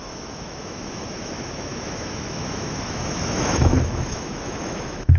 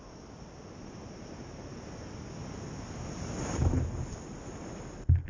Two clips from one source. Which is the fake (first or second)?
first